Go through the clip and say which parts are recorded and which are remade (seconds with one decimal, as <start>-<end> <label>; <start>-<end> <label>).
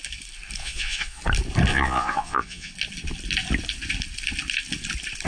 0.0-0.6 recorded; 0.6-1.2 remade; 1.2-1.7 recorded; 1.7-2.7 remade; 2.7-5.3 recorded